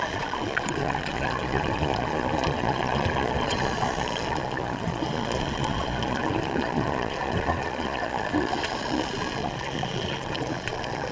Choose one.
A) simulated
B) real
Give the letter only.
A